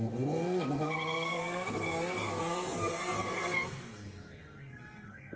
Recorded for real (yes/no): no